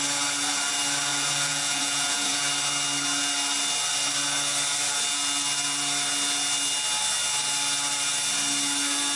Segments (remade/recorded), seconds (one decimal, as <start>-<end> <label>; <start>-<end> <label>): 0.0-1.1 recorded; 1.1-2.4 remade; 2.4-9.2 recorded